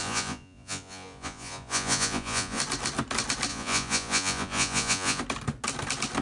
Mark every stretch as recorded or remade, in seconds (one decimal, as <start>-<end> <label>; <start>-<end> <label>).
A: 0.0-2.6 remade; 2.6-3.5 recorded; 3.5-5.2 remade; 5.2-6.2 recorded